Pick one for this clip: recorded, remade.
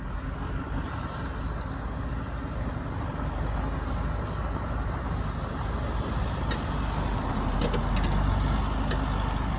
recorded